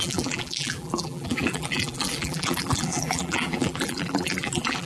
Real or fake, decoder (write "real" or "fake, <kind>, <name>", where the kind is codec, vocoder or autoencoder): fake, vocoder, BigVGAN v2